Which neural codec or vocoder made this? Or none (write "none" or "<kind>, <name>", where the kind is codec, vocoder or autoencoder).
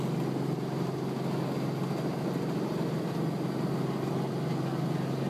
none